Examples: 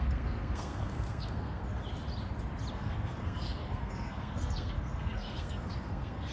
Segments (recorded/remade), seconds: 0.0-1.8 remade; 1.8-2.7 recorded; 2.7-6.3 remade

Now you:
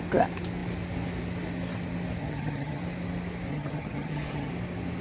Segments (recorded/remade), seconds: 0.0-2.2 recorded; 2.2-2.8 remade; 2.8-3.5 recorded; 3.5-4.5 remade; 4.5-5.0 recorded